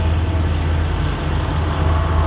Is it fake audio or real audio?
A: real